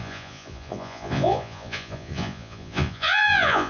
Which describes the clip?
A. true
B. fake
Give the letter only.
B